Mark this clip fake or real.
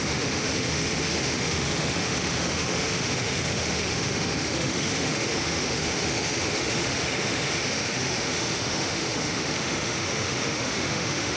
fake